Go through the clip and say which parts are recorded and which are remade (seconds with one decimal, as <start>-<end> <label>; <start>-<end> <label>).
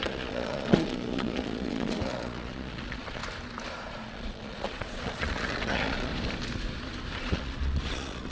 0.0-3.2 remade; 3.2-3.9 recorded; 3.9-6.1 remade; 6.1-7.2 recorded; 7.2-8.3 remade